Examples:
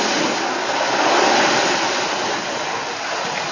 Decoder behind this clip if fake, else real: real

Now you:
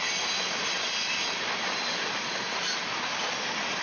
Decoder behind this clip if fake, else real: real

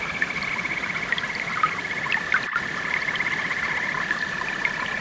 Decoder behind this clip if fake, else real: real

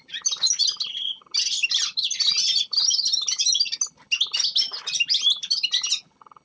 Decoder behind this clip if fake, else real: real